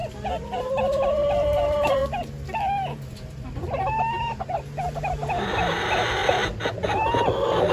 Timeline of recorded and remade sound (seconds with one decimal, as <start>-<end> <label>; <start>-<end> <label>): 0.0-0.6 recorded; 0.6-2.0 remade; 2.0-5.0 recorded; 5.0-6.2 remade; 6.2-7.7 recorded